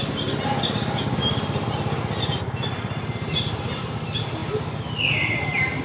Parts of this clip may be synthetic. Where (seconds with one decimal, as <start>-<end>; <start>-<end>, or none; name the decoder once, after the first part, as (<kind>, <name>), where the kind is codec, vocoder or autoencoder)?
none